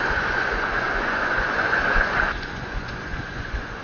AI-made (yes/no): yes